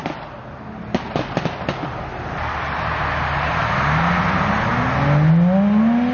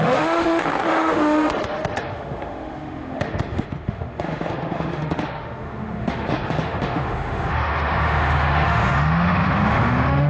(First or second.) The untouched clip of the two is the first